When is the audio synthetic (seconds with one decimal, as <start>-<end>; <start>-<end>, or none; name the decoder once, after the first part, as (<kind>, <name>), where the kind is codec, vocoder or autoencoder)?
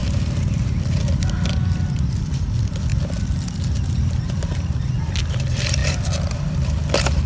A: 2.2-2.9 (vocoder, BigVGAN v2); 4.1-7.3